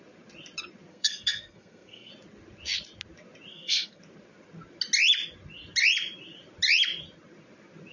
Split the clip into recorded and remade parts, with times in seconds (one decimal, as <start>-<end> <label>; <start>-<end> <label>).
0.0-0.9 recorded; 0.9-2.1 remade; 2.1-3.5 recorded; 3.5-4.0 remade; 4.0-7.9 recorded